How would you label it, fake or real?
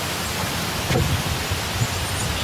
real